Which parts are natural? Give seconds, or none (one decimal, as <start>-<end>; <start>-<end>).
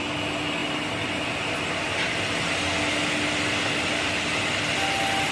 0.0-5.3